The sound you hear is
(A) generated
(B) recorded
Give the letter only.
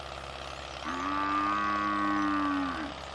B